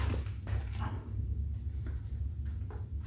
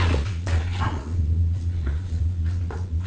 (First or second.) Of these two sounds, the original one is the first